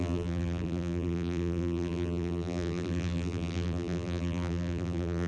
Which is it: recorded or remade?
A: remade